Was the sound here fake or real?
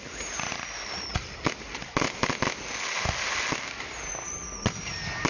real